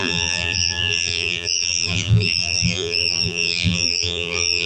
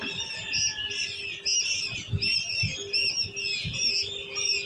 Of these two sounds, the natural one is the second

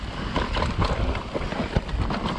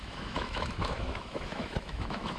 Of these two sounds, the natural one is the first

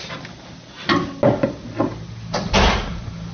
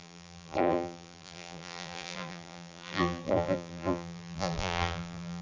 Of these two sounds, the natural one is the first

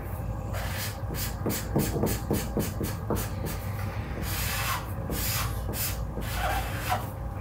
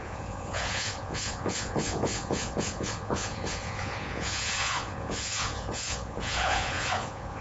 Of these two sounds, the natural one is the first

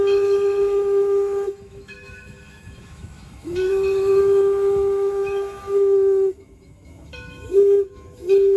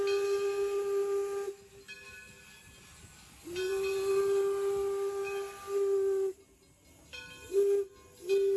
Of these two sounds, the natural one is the second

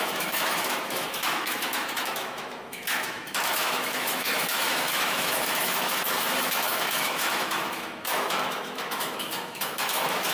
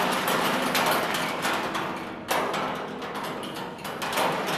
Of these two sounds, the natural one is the second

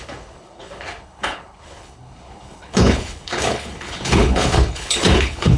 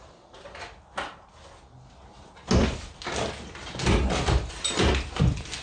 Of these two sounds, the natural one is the second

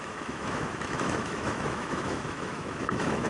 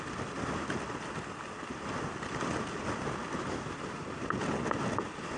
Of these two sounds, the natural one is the second